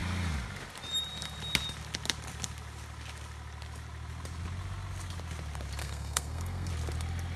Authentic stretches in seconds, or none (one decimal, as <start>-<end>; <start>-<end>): 0.0-5.8; 6.7-7.4